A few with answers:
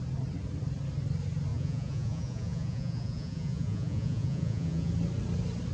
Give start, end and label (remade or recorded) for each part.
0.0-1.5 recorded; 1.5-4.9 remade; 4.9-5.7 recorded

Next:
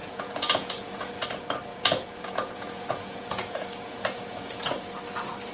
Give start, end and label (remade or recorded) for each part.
0.0-1.1 remade; 1.1-1.7 recorded; 1.7-5.0 remade; 5.0-5.5 recorded

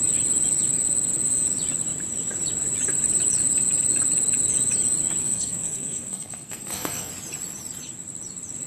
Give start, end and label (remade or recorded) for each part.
0.0-5.2 recorded; 5.2-7.1 remade; 7.1-8.7 recorded

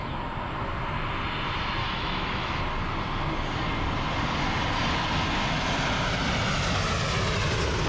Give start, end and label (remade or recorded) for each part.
0.0-1.8 recorded; 1.8-2.6 remade; 2.6-7.9 recorded

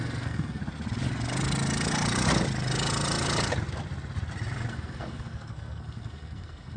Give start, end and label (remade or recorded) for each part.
0.0-0.6 remade; 0.6-4.7 recorded; 4.7-6.8 remade

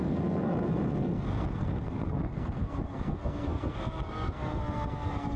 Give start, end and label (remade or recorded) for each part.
0.0-5.4 remade